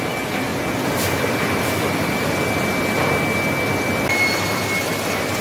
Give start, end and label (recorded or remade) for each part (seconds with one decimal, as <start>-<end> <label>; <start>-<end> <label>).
0.0-5.4 recorded